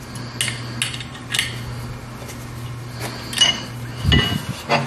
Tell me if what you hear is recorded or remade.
recorded